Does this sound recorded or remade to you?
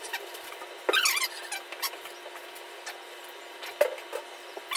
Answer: recorded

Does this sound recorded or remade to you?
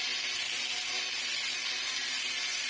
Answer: recorded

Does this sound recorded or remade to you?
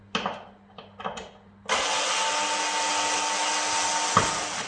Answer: recorded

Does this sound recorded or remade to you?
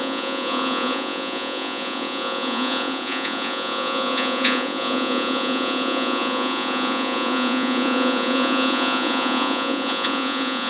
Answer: remade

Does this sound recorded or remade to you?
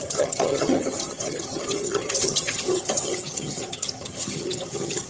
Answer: remade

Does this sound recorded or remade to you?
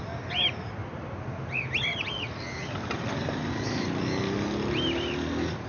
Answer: recorded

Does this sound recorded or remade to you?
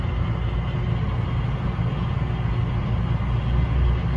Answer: recorded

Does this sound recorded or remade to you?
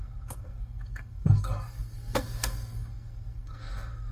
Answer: remade